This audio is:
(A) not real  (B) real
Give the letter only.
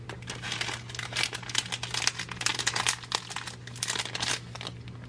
B